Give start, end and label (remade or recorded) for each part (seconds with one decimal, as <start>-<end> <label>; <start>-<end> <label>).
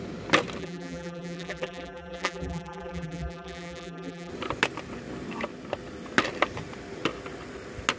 0.0-0.6 recorded; 0.6-4.3 remade; 4.3-8.0 recorded